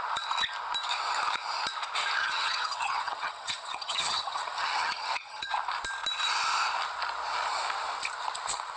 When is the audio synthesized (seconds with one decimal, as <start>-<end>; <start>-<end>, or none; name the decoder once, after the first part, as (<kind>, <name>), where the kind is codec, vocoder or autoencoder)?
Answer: 2.2-5.5 (vocoder, HiFi-GAN)